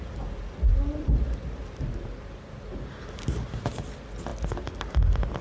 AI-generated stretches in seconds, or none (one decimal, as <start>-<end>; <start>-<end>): 0.7-3.7